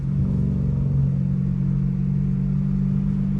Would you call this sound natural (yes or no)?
yes